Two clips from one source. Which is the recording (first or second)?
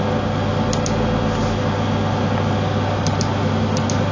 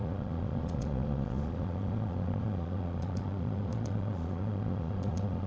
first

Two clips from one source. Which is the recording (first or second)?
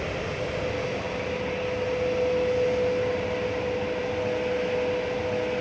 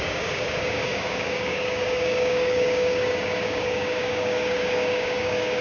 first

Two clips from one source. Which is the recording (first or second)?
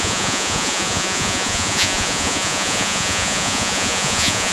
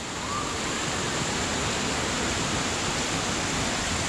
second